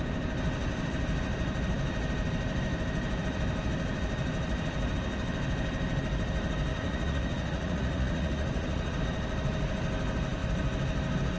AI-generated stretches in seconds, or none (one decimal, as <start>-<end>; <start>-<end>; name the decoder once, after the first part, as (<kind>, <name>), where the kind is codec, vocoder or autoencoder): 6.7-9.0 (vocoder, Vocos)

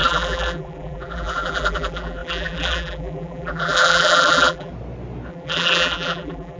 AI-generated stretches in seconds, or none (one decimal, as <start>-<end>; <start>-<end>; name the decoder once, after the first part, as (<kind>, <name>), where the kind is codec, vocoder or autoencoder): 0.0-4.7 (vocoder, BigVGAN v2); 5.3-6.6

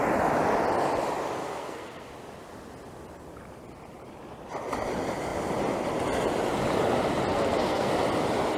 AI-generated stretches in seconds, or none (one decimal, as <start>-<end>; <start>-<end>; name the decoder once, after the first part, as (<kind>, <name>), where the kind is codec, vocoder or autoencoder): 1.4-2.1 (codec, SNAC); 7.3-7.9

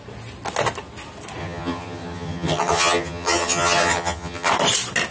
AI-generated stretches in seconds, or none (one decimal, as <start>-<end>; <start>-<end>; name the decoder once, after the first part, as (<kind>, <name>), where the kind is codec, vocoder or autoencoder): 1.4-4.5 (vocoder, HiFi-GAN)

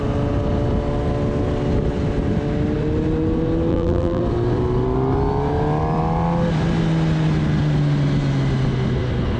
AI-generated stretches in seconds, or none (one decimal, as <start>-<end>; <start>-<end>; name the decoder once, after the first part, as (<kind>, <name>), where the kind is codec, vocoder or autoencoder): 3.7-4.2 (vocoder, BigVGAN v2)